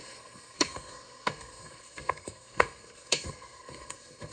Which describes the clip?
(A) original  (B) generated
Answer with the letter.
B